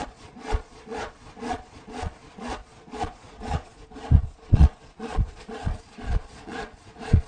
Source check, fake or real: fake